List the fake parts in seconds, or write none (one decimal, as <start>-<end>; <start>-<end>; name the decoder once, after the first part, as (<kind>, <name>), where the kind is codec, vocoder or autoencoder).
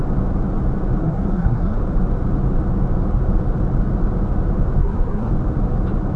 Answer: 1.0-1.8 (codec, SNAC); 4.8-5.3